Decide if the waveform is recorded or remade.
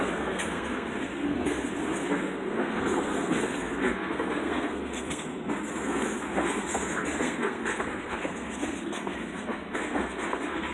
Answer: remade